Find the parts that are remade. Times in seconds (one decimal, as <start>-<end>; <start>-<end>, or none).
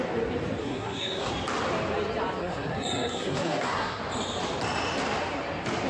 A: 0.6-1.3; 2.4-4.0